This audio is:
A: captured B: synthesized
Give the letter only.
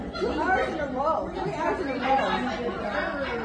A